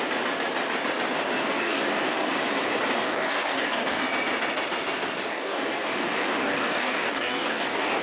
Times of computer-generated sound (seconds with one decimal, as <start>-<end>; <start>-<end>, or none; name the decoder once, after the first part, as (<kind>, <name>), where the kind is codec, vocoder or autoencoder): 1.4-2.3 (codec, DAC); 3.0-4.0; 5.3-8.0